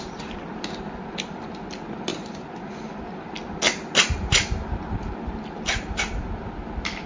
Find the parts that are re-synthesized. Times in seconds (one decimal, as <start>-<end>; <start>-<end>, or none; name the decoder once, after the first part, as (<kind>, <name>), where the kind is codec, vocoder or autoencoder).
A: none